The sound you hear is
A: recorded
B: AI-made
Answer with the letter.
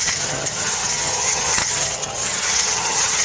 B